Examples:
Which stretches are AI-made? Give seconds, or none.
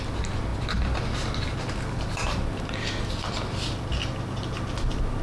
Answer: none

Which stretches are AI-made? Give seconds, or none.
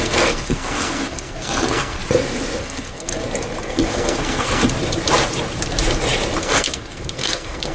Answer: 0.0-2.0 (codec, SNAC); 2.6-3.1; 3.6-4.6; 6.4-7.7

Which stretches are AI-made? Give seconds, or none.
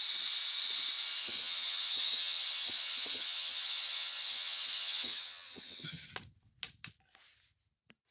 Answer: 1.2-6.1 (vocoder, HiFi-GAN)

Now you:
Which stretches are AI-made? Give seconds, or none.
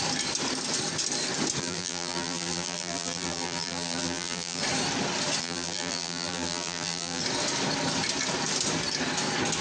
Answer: 1.6-4.6 (vocoder, BigVGAN v2); 5.4-7.2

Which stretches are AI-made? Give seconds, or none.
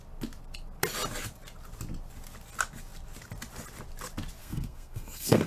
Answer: 4.4-5.5 (codec, SNAC)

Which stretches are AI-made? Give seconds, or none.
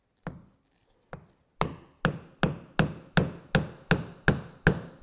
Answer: none